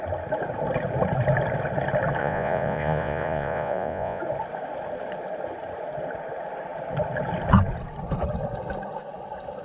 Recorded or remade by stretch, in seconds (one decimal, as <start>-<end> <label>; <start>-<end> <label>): 0.0-2.2 recorded; 2.2-4.2 remade; 4.2-9.6 recorded